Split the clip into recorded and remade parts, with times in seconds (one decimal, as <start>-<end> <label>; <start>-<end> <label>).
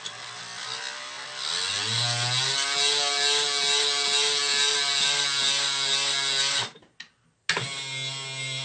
0.0-8.6 recorded